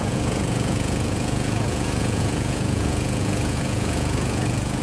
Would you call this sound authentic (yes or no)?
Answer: no